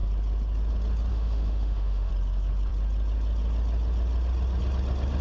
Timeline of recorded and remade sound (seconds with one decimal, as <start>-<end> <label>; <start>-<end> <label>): 0.0-1.1 recorded; 1.1-2.1 remade; 2.1-5.2 recorded